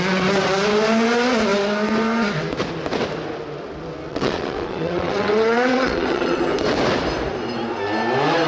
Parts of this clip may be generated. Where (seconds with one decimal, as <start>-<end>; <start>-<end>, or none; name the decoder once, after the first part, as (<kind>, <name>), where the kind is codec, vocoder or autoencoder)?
4.1-6.4 (vocoder, WaveNeXt)